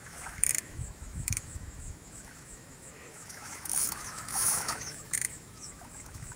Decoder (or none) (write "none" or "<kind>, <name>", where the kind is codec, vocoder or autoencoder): autoencoder, DAC-VAE